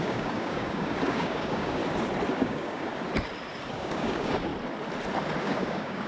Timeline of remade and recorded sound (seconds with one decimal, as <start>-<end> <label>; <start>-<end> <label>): 0.0-1.8 remade; 1.8-2.3 recorded; 2.3-2.9 remade; 2.9-3.7 recorded; 3.7-4.5 remade; 4.5-5.4 recorded; 5.4-6.1 remade